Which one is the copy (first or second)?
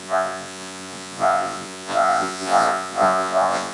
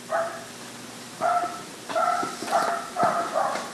first